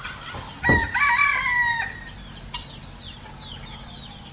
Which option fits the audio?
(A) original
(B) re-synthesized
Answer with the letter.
A